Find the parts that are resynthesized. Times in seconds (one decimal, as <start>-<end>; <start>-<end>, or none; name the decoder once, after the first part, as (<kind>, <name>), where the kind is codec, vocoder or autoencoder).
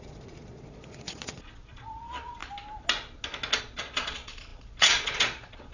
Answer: 0.0-2.4 (vocoder, Vocos); 3.6-5.7